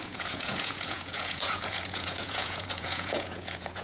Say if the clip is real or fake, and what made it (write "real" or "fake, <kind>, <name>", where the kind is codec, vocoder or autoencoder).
fake, vocoder, Vocos